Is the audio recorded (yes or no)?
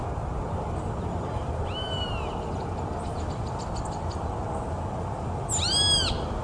yes